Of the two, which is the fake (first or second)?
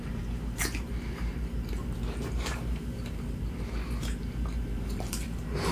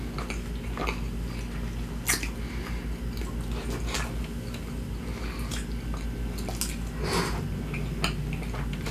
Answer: first